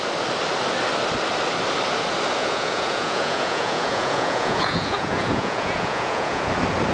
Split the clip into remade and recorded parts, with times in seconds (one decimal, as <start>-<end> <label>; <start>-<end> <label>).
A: 0.0-2.4 recorded; 2.4-6.5 remade; 6.5-6.9 recorded